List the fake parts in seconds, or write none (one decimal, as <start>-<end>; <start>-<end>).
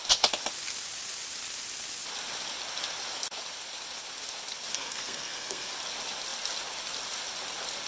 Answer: 4.7-5.7